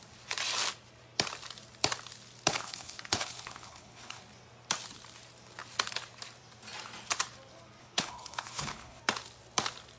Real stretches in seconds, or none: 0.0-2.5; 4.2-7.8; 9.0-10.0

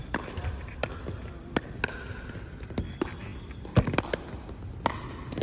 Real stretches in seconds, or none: 0.0-5.4

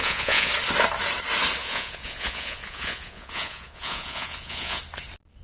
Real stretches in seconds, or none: 0.5-1.6; 4.8-5.4

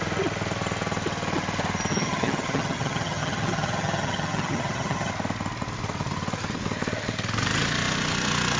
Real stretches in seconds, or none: 0.0-1.9; 5.1-8.6